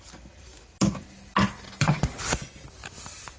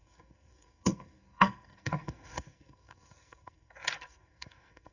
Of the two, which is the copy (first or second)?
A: second